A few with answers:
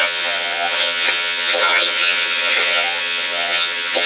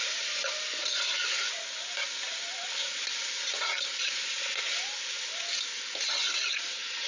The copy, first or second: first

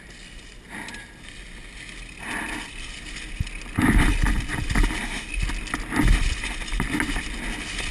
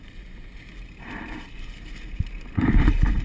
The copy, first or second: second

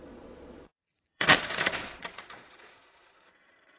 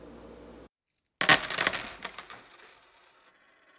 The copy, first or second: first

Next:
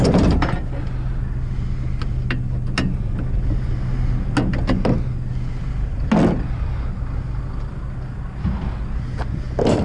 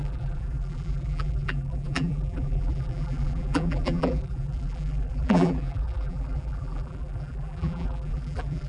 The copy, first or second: second